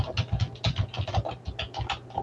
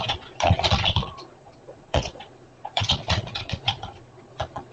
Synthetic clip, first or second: second